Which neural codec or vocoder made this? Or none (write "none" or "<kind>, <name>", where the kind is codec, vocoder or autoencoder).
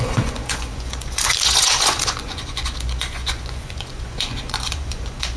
vocoder, Vocos